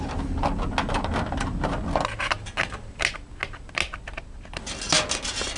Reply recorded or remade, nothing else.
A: recorded